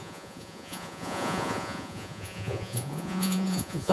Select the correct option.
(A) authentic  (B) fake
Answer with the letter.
B